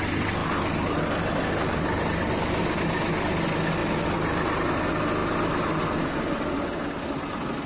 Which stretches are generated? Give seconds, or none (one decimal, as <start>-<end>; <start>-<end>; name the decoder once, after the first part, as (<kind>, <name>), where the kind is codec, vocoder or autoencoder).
none

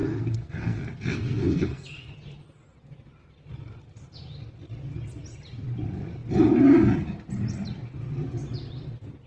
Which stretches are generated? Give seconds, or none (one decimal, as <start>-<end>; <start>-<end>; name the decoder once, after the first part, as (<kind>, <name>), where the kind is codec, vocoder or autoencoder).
0.0-2.1 (codec, SNAC)

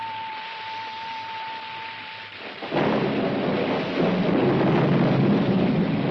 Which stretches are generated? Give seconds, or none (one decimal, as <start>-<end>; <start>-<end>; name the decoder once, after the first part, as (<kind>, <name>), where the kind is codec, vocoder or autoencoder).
none

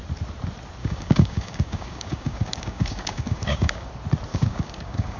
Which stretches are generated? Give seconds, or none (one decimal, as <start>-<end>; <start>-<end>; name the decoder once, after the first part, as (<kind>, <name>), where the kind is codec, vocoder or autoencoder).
0.8-3.9 (codec, DAC); 4.3-5.2